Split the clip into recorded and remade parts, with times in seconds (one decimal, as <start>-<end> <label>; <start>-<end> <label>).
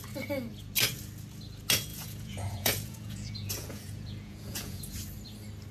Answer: 0.0-1.9 recorded; 1.9-4.8 remade; 4.8-5.7 recorded